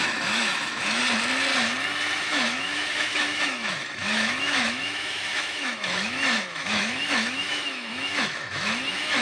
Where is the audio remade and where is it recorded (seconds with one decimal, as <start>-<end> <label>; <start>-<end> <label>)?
0.0-1.0 remade; 1.0-2.2 recorded; 2.2-9.2 remade